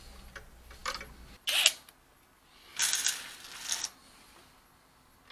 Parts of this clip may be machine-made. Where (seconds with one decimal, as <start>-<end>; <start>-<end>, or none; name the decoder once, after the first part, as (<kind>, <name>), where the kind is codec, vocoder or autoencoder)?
none